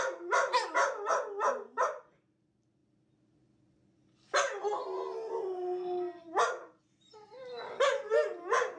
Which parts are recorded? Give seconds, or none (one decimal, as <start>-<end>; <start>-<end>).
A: 0.0-8.8